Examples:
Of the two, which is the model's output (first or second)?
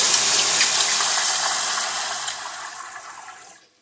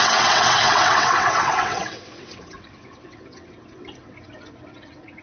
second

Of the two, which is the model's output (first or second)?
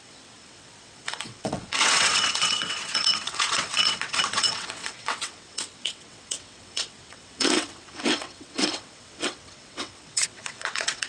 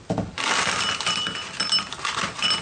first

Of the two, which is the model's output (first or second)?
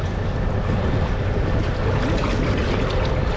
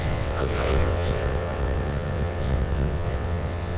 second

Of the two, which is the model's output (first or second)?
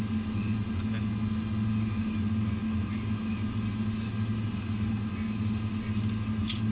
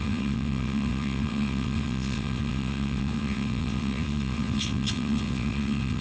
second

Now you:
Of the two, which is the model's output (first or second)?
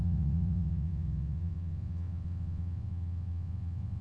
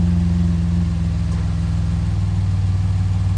first